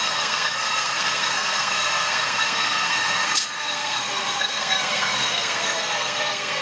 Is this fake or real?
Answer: fake